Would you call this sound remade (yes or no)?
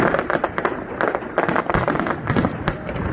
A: no